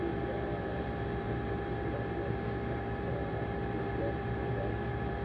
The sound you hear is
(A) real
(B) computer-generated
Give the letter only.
B